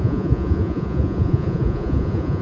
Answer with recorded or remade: remade